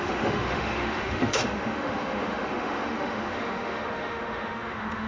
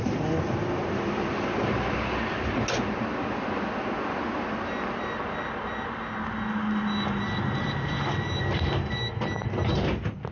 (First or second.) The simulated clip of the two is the first